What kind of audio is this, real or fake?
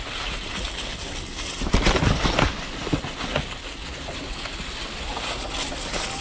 real